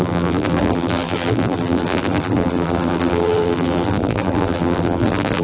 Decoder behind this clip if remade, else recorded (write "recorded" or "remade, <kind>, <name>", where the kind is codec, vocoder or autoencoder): remade, vocoder, BigVGAN v2